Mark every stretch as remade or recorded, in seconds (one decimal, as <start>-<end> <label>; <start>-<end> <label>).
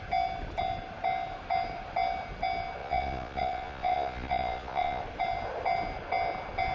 0.0-2.8 recorded; 2.8-5.0 remade; 5.0-6.7 recorded